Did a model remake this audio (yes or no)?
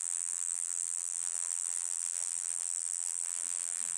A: yes